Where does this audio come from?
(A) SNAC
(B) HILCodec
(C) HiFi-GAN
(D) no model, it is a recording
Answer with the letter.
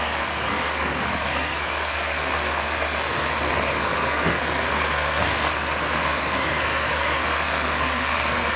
A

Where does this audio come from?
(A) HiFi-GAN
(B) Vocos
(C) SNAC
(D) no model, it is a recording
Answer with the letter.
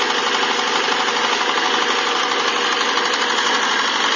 D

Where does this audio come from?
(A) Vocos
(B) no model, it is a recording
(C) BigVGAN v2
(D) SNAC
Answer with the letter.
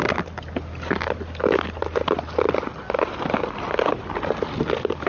B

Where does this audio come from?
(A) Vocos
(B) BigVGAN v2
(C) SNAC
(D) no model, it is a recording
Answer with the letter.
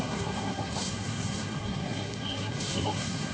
C